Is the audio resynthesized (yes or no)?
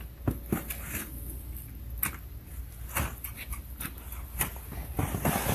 no